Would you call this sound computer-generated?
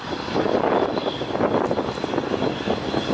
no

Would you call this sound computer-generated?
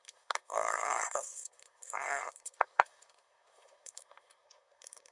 yes